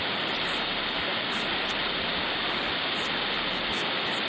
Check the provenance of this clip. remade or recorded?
recorded